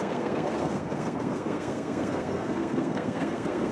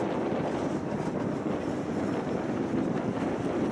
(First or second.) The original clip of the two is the second